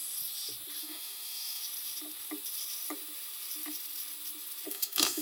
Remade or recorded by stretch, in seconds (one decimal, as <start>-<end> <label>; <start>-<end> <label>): 0.0-0.8 recorded; 0.8-1.6 remade; 1.6-4.7 recorded; 4.7-5.2 remade